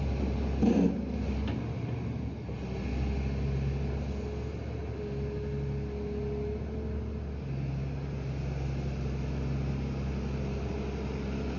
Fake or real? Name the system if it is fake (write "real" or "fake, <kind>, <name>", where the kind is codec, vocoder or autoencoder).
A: real